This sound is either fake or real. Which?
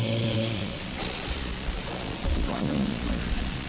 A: fake